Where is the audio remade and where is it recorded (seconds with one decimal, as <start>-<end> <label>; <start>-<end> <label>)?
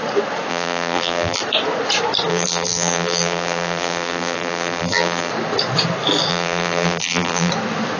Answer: 0.0-0.5 recorded; 0.5-1.4 remade; 1.4-2.3 recorded; 2.3-5.3 remade; 5.3-6.3 recorded; 6.3-7.5 remade; 7.5-8.0 recorded